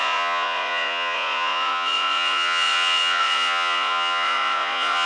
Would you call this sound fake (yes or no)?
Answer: yes